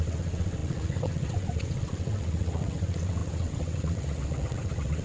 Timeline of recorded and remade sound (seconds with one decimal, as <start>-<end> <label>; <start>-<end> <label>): 0.0-5.0 remade